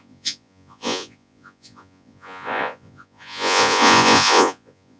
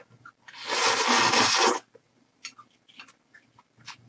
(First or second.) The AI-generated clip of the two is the first